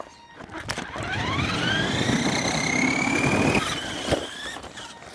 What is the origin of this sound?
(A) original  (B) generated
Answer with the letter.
A